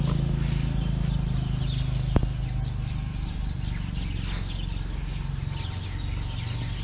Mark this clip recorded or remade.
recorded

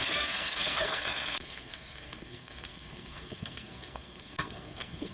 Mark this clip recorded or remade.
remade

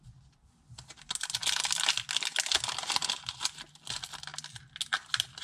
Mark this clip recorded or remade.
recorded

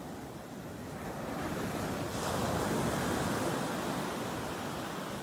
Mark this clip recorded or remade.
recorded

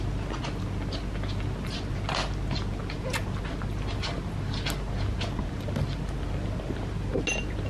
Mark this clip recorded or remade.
recorded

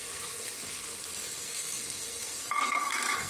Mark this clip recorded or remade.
remade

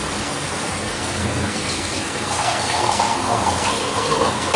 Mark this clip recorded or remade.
remade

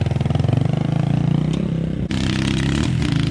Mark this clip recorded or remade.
recorded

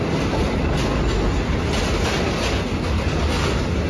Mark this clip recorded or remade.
recorded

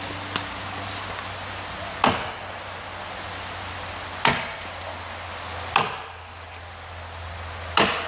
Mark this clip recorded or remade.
recorded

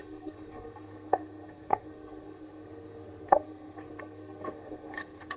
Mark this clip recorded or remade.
remade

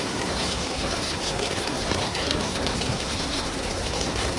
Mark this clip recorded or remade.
remade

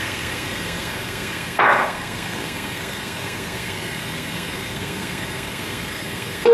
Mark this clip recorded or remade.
remade